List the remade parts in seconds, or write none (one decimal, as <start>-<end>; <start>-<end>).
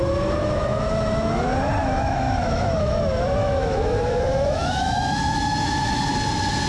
0.4-1.4; 1.8-3.0; 3.4-5.9